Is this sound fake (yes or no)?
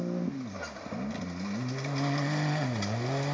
no